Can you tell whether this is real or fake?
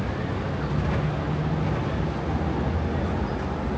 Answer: real